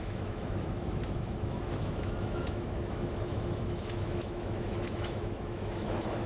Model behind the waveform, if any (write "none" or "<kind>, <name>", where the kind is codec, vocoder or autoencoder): autoencoder, DAC-VAE